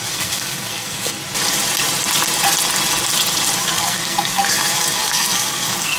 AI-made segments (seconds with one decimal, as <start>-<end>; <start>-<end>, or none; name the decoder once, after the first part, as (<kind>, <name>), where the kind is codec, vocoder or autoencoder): 0.0-1.2 (codec, SNAC); 3.6-6.0